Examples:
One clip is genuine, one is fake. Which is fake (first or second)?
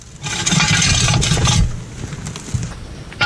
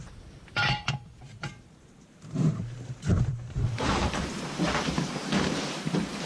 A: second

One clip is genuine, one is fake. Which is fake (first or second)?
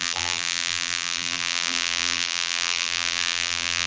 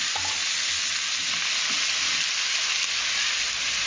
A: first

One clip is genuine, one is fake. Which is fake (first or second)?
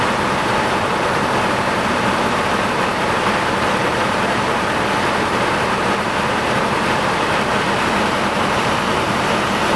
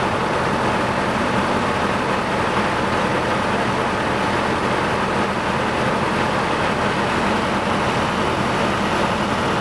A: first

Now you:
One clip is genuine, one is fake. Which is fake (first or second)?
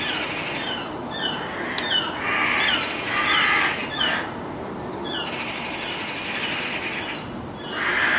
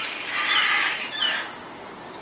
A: second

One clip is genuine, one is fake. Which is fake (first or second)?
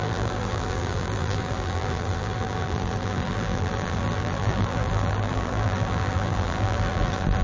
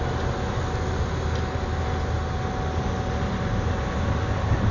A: first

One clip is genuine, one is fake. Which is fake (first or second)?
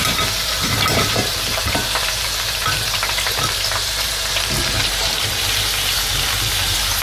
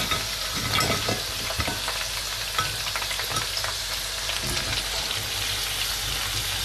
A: first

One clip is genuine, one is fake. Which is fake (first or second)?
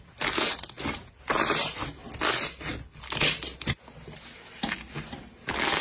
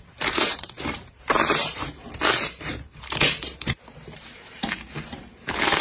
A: second